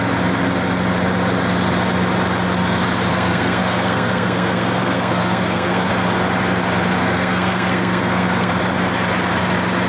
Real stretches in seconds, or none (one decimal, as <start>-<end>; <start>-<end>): 0.0-3.1; 5.9-7.0; 8.5-9.9